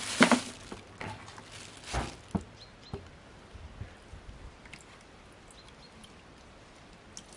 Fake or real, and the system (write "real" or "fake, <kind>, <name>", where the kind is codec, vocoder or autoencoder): real